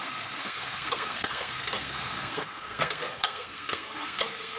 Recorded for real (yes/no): no